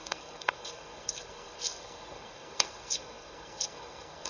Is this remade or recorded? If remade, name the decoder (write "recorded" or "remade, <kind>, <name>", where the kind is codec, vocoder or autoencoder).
remade, codec, SNAC